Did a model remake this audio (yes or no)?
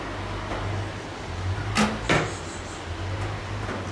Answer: no